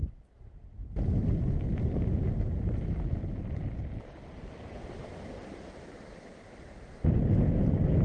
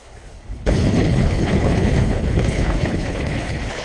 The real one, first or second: first